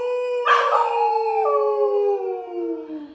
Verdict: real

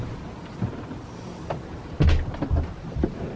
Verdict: real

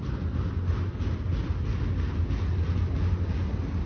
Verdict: real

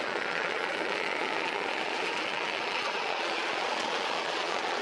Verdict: fake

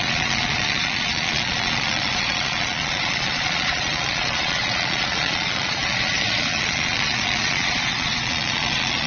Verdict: fake